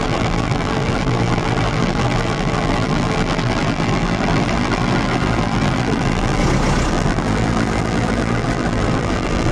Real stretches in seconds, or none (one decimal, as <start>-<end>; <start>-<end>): 6.4-6.9